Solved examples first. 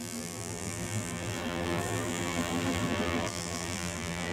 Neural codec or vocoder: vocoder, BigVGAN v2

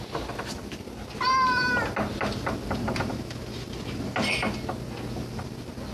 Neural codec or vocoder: none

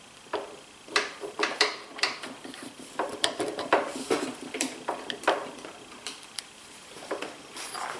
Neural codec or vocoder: vocoder, BigVGAN v2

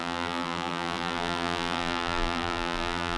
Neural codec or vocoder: vocoder, BigVGAN v2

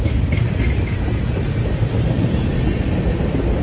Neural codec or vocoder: none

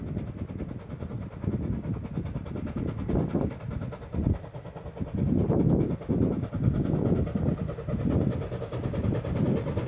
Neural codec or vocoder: none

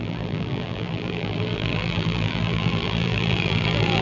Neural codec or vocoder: vocoder, BigVGAN v2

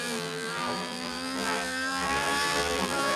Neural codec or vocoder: vocoder, BigVGAN v2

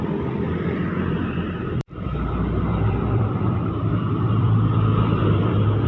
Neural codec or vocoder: vocoder, BigVGAN v2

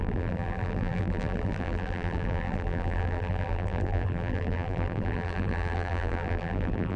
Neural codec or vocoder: vocoder, BigVGAN v2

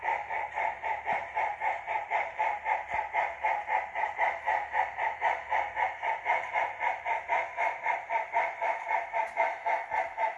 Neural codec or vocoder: vocoder, BigVGAN v2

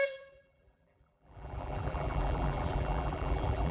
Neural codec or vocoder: vocoder, BigVGAN v2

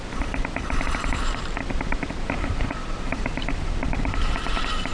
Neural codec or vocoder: vocoder, BigVGAN v2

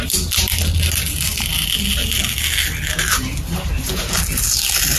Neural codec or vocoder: none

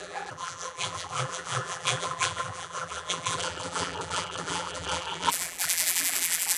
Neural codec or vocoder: vocoder, BigVGAN v2